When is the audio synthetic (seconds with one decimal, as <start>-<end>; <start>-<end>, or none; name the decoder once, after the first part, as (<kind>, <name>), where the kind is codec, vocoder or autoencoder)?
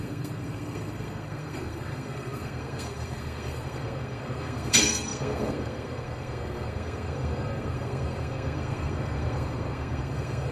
0.0-10.5 (codec, SNAC)